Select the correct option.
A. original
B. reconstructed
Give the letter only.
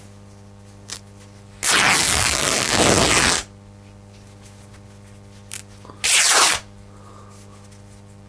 A